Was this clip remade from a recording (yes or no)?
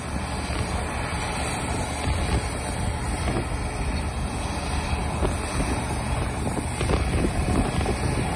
no